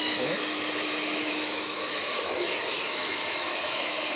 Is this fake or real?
fake